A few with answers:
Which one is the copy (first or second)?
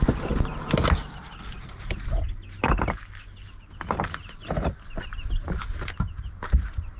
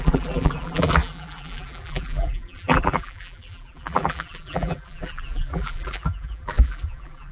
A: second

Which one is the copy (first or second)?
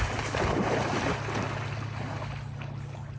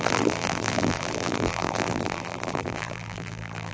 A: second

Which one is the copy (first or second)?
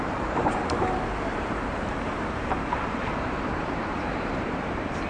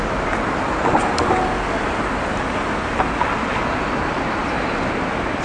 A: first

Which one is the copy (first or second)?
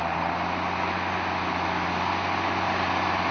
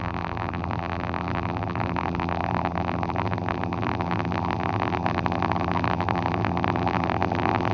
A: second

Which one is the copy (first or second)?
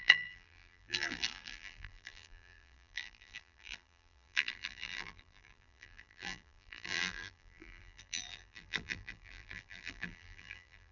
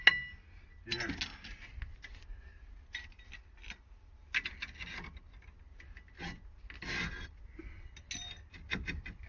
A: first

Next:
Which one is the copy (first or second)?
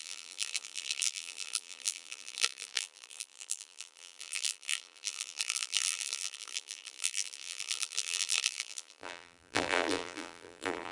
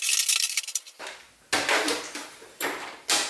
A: first